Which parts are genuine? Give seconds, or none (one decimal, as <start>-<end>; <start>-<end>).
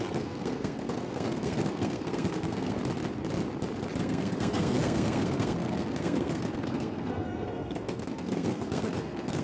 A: 2.8-4.0